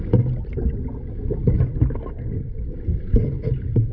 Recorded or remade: recorded